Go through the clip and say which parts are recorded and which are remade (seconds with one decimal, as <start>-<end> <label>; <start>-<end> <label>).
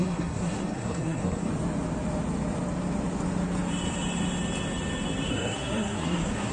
0.0-1.5 remade; 1.5-5.3 recorded; 5.3-6.5 remade